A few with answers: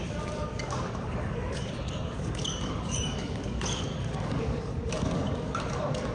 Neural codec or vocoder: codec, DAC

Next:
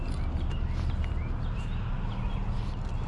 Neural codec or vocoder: none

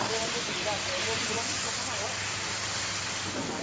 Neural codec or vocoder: none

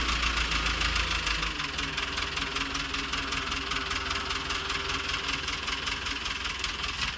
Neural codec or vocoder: none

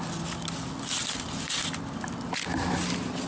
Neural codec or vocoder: none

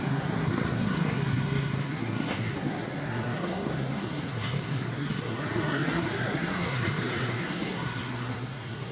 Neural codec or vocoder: codec, SNAC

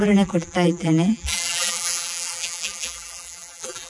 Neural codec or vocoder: vocoder, BigVGAN v2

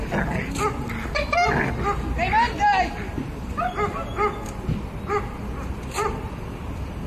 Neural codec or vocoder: none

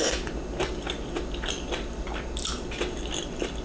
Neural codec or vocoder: none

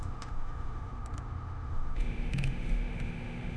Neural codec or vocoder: autoencoder, DAC-VAE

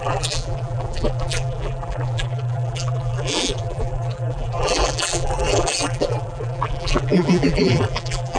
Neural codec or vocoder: vocoder, BigVGAN v2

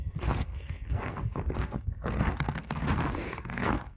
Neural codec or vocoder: codec, SNAC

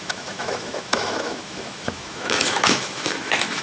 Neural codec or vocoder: autoencoder, DAC-VAE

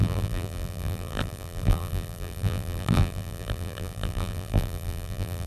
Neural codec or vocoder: vocoder, BigVGAN v2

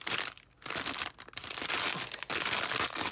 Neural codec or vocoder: none